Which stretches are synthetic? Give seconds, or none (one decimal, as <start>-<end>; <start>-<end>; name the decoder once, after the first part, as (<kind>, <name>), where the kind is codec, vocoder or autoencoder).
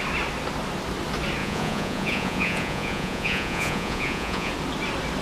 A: 1.4-4.5 (vocoder, Vocos)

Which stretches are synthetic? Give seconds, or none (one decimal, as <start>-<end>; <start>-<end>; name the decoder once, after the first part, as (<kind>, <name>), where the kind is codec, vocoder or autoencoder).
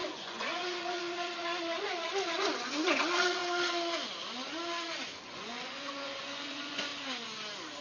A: 0.0-3.4 (vocoder, Vocos); 5.2-6.9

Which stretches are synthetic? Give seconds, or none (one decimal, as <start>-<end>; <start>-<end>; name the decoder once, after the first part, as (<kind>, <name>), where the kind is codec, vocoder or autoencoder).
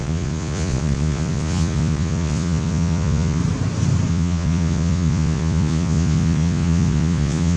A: 0.0-3.4 (vocoder, Vocos); 4.1-7.6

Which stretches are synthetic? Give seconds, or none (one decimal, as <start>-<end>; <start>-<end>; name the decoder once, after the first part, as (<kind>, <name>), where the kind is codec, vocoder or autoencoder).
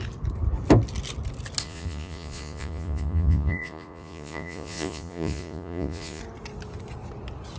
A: 1.6-6.2 (vocoder, Vocos)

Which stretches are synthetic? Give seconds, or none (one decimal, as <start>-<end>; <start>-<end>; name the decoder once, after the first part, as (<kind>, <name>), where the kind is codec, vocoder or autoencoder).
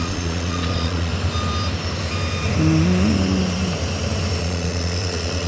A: 0.0-1.1 (vocoder, Vocos); 4.4-5.5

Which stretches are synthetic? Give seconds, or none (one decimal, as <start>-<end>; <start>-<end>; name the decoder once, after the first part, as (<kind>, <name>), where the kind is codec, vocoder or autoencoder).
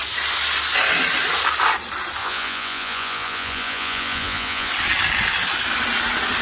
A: 2.2-4.7 (vocoder, Vocos)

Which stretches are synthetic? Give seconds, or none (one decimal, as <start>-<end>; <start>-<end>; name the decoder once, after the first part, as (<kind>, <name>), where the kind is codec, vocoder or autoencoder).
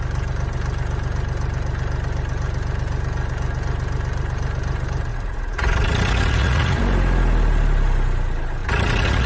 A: 5.1-6.8 (vocoder, Vocos); 8.6-9.3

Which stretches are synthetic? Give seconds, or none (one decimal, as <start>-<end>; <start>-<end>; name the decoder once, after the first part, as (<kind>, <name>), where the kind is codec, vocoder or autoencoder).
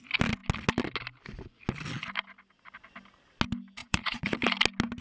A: 3.8-4.3 (vocoder, Vocos)